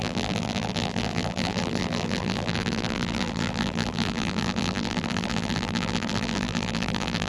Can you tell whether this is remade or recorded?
remade